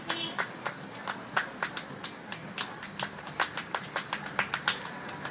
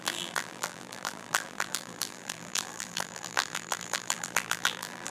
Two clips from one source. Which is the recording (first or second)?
first